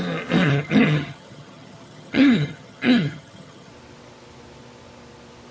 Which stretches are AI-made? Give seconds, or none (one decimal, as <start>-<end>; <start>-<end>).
0.4-3.7